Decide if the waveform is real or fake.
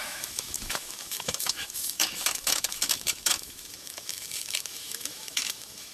fake